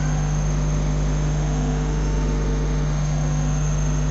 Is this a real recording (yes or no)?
no